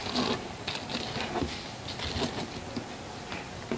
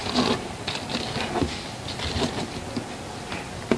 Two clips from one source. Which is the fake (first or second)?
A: second